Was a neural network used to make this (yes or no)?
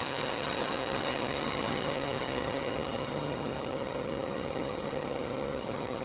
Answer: yes